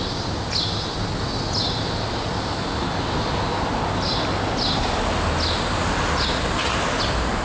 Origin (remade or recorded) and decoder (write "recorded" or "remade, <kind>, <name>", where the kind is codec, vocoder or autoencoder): recorded